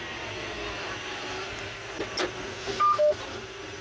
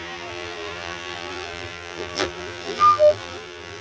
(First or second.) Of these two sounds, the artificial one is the second